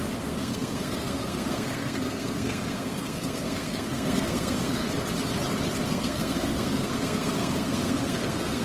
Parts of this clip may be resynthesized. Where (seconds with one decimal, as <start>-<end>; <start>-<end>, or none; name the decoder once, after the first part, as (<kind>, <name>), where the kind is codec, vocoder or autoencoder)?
0.0-4.8 (codec, SNAC); 5.9-8.6